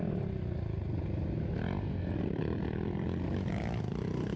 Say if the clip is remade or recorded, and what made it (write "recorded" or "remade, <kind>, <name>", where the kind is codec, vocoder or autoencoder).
recorded